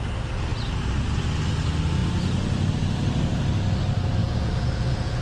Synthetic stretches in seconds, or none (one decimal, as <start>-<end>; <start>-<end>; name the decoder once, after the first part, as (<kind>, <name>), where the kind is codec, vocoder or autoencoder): 4.2-5.2 (vocoder, Vocos)

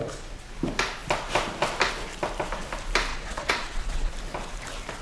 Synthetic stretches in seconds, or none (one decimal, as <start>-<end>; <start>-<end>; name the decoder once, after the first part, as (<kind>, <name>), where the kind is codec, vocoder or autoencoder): 3.1-4.1 (vocoder, Vocos)

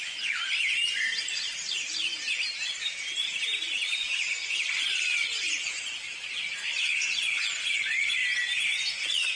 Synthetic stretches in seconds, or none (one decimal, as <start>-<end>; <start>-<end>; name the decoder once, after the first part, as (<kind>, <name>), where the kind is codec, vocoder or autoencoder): 0.0-0.6 (vocoder, Vocos); 3.6-8.2; 8.8-9.4

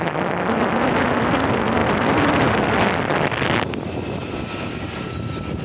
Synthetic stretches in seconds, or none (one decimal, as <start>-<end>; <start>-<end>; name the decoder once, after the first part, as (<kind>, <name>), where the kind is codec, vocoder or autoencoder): none

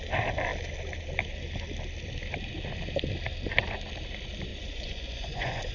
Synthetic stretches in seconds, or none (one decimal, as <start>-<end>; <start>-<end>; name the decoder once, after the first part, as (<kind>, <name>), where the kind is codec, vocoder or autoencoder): 4.5-5.7 (vocoder, Vocos)

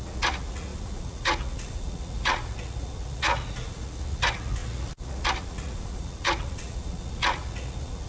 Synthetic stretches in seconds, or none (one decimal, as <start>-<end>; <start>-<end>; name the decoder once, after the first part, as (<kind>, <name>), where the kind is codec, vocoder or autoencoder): 0.0-8.1 (vocoder, Vocos)

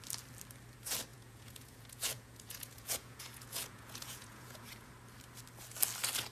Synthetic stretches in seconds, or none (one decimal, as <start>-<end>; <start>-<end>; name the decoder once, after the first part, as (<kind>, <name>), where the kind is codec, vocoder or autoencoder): 1.1-4.9 (vocoder, Vocos)

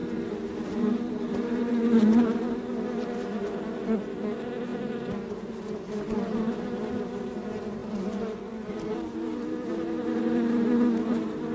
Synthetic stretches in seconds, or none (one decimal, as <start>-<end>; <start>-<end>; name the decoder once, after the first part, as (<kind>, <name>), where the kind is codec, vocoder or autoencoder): none